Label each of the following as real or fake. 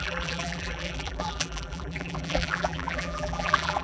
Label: fake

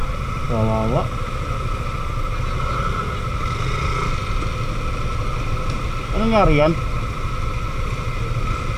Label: real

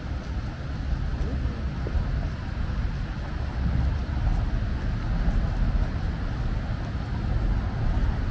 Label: real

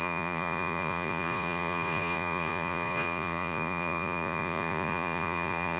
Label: fake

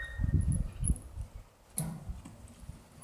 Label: real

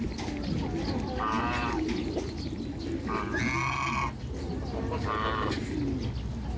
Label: real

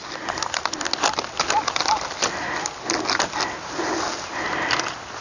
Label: real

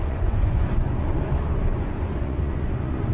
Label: fake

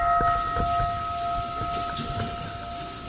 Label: real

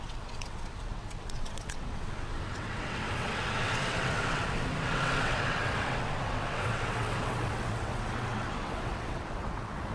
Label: fake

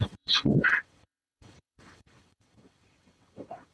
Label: fake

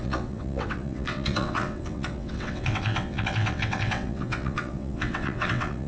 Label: fake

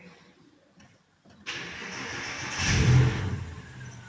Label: real